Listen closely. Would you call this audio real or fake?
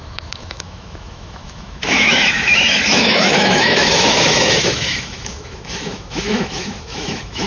fake